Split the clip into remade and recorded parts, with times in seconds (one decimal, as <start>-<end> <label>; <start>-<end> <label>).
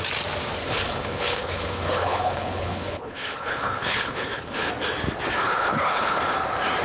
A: 0.0-0.6 recorded; 0.6-4.7 remade; 4.7-5.4 recorded; 5.4-6.2 remade; 6.2-6.8 recorded